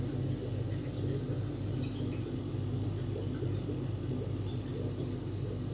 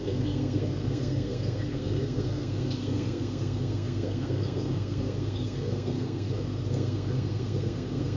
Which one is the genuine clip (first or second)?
first